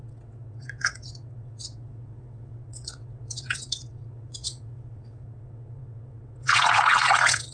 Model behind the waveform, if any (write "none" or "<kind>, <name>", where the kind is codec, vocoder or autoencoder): vocoder, WaveNeXt